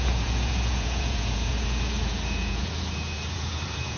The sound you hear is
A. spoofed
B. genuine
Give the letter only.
A